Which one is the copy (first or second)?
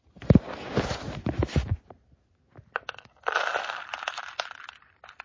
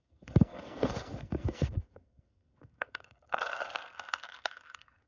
second